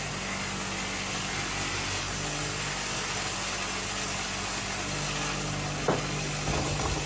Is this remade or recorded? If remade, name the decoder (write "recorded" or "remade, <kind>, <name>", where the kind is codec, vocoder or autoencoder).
recorded